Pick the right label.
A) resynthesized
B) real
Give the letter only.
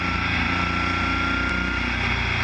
B